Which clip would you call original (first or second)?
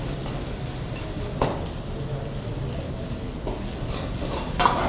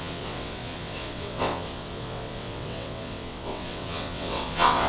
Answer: first